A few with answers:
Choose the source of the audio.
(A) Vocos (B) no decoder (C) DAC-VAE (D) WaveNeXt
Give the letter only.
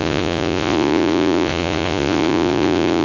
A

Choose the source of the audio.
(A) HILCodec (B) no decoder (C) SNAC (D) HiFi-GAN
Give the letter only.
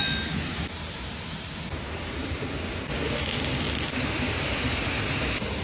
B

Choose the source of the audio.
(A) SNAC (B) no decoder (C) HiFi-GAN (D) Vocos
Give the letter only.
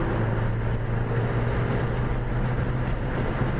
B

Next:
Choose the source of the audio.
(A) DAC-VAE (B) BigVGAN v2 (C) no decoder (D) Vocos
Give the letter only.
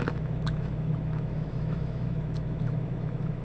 A